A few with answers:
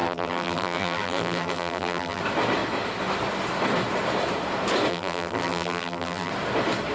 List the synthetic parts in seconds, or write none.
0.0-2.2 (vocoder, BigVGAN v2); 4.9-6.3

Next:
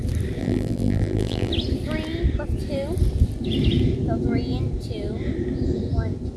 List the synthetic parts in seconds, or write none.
0.4-1.5 (vocoder, BigVGAN v2)